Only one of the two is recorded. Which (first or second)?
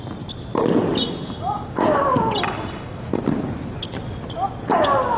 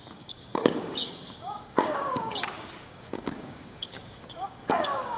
first